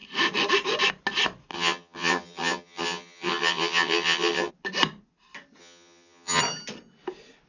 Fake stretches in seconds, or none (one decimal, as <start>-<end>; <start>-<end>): 1.5-4.5; 5.6-6.4